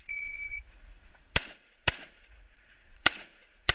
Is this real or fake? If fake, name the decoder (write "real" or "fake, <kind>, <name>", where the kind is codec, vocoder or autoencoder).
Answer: fake, vocoder, Vocos